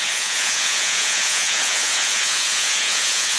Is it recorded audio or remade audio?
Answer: remade